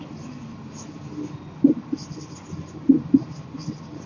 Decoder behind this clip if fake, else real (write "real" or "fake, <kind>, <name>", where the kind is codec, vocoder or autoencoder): real